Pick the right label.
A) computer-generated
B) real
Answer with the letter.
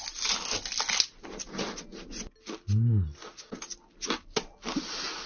B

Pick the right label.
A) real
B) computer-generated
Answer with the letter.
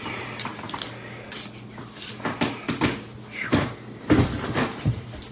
A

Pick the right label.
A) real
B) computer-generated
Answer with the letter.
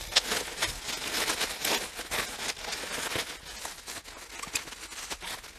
A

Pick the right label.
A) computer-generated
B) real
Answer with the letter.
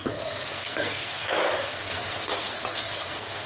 A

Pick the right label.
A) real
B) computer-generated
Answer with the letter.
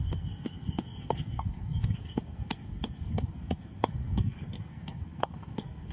B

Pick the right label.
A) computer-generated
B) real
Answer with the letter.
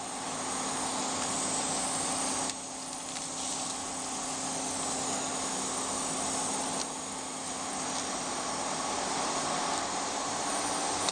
B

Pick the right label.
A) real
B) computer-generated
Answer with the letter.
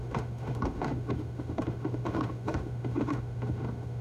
B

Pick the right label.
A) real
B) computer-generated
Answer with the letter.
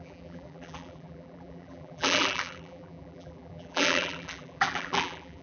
B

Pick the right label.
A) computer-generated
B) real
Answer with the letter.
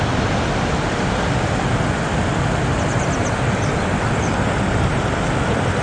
B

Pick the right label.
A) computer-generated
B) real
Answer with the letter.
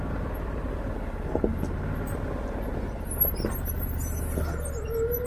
B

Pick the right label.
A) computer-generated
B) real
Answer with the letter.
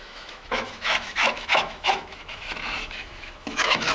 A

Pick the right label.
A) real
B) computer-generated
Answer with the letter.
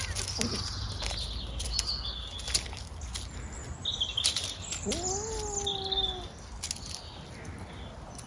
A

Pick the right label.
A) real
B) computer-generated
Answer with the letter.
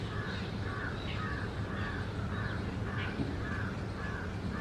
A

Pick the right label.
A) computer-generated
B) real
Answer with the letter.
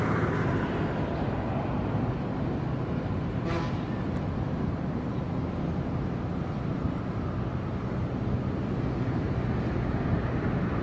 B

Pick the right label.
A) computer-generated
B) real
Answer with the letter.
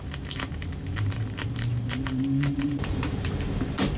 A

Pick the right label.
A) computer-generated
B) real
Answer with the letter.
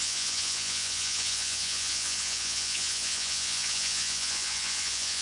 A